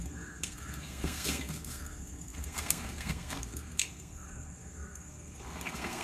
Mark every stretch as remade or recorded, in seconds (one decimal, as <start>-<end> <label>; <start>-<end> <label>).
0.0-6.0 remade